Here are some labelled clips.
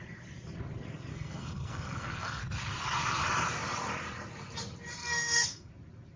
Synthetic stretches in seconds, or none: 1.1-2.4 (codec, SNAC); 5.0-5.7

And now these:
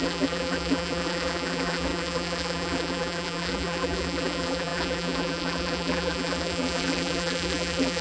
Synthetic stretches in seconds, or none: 0.0-8.0 (vocoder, BigVGAN v2)

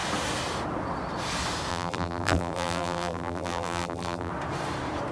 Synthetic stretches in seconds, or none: 1.7-4.3 (vocoder, BigVGAN v2)

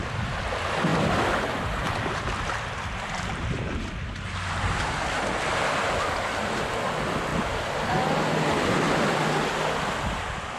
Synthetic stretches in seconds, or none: 0.9-3.2 (vocoder, BigVGAN v2)

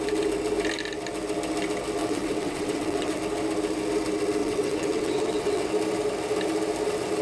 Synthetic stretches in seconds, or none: 2.0-3.2 (vocoder, WaveNeXt); 4.4-5.7